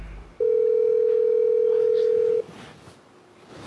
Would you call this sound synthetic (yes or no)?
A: no